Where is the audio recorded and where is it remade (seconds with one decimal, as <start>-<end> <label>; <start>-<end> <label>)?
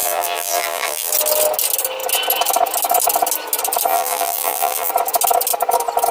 0.0-1.1 remade; 1.1-3.9 recorded; 3.9-4.9 remade; 4.9-6.1 recorded